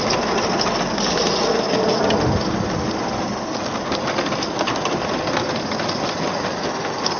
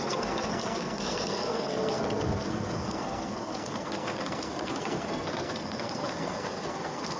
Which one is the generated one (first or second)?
second